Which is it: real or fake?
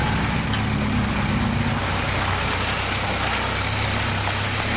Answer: real